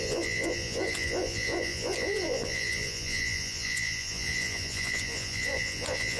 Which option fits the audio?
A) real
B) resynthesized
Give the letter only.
B